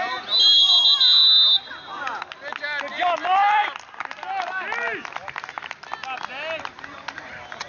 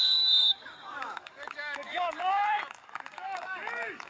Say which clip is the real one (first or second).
first